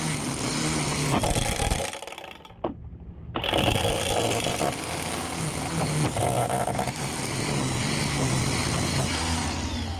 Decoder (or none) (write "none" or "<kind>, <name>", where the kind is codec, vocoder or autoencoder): none